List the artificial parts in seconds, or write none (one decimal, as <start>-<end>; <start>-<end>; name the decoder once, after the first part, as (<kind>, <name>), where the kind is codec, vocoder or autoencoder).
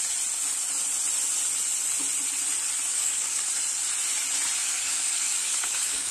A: 2.9-3.5 (codec, DAC); 4.6-6.1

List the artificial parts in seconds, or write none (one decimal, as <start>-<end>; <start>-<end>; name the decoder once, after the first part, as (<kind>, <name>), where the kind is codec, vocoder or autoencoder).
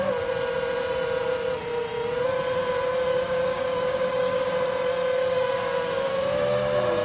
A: 3.1-4.6 (codec, DAC); 5.2-6.1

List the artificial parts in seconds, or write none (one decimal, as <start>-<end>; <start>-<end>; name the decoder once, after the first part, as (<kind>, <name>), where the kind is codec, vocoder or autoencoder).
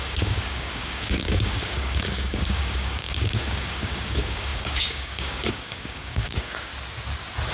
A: 0.0-6.7 (codec, DAC)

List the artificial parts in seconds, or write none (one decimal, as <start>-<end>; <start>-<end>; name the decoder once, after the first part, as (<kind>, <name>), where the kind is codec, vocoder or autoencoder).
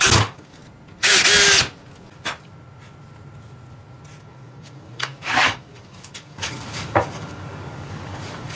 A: 0.0-0.6 (codec, DAC); 4.2-8.6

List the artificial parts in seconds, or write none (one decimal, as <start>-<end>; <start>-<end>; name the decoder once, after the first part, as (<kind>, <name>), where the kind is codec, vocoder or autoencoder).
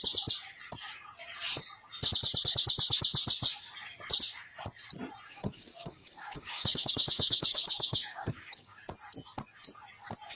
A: 5.3-8.8 (codec, DAC)